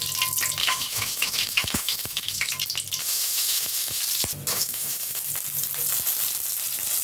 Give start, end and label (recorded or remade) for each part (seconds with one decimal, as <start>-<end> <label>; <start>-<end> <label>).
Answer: 0.0-0.6 recorded; 0.6-2.5 remade; 2.5-3.0 recorded; 3.0-4.0 remade; 4.0-4.5 recorded; 4.5-5.2 remade; 5.2-7.0 recorded